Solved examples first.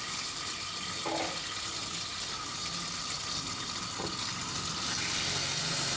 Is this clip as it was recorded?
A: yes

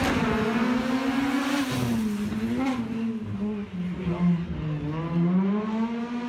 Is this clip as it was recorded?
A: yes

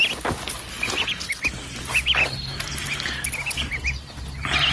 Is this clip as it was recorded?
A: yes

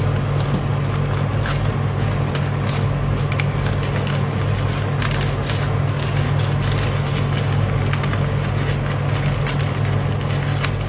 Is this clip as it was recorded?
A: yes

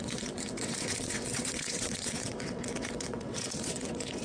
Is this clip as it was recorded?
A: no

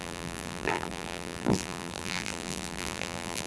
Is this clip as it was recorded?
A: no